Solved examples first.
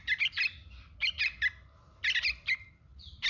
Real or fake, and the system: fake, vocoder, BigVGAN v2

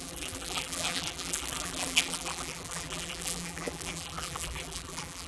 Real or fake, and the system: fake, vocoder, BigVGAN v2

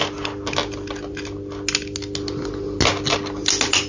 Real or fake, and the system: real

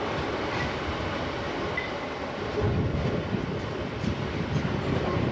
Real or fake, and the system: real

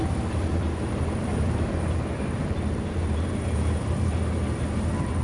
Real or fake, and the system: fake, vocoder, BigVGAN v2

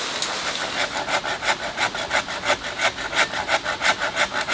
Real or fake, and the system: real